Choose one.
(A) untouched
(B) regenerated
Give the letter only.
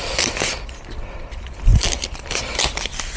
B